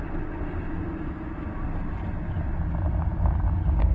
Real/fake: real